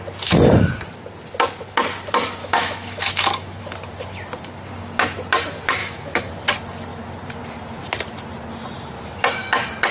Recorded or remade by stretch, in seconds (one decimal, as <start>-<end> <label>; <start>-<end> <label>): 0.0-2.4 recorded; 2.4-3.6 remade; 3.6-5.8 recorded; 5.8-6.3 remade; 6.3-9.9 recorded